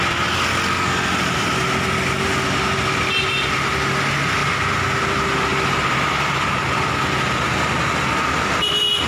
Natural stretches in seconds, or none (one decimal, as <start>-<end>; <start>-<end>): 0.0-9.1